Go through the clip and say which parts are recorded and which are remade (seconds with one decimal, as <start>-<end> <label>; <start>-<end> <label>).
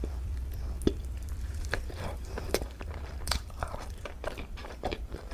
0.0-1.0 recorded; 1.0-4.1 remade; 4.1-4.6 recorded; 4.6-5.3 remade